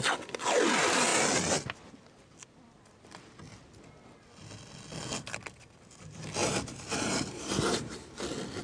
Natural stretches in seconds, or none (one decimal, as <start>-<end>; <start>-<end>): 0.0-6.4; 8.2-8.6